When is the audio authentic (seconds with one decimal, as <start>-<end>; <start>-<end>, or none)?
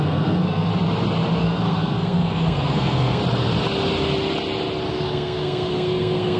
0.7-1.4; 3.2-4.9